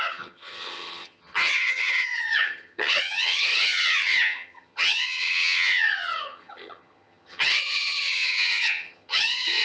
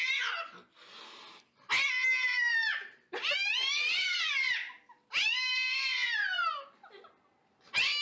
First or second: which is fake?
first